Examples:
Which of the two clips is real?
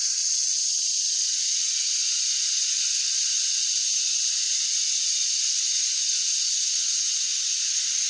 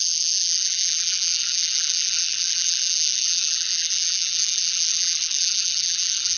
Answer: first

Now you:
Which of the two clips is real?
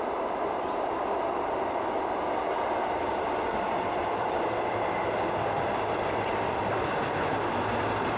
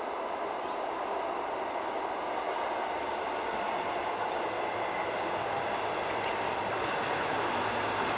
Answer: second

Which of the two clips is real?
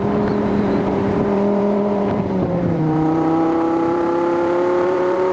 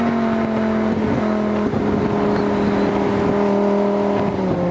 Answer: second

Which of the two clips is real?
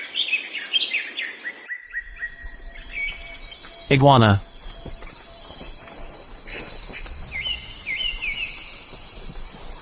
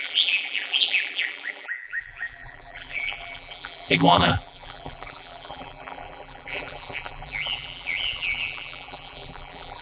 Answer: first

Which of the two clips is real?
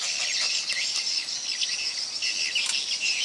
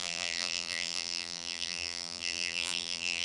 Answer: first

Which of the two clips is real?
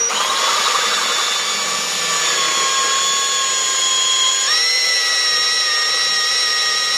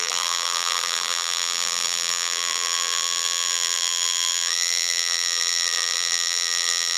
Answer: first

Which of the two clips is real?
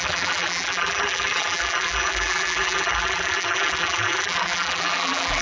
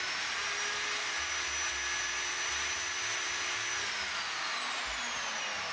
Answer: second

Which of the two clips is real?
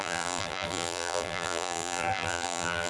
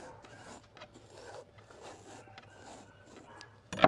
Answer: second